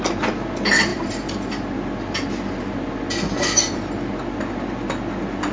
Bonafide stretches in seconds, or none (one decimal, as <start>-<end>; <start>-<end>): 0.0-0.9; 1.5-5.5